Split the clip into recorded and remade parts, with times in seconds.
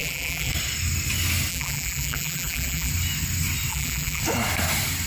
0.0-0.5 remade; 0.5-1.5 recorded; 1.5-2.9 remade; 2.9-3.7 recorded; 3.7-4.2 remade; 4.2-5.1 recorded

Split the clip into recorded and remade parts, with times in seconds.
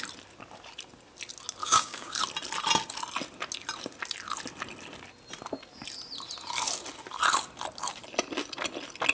0.0-1.6 recorded; 1.6-2.2 remade; 2.2-9.1 recorded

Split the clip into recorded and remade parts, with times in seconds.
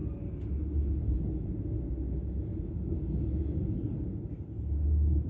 0.0-5.3 recorded